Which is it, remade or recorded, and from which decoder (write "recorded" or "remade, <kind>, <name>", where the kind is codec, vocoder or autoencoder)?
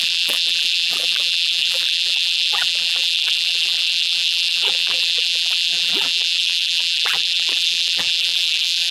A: remade, vocoder, BigVGAN v2